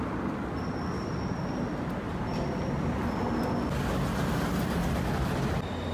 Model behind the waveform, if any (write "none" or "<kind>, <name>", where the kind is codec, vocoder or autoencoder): none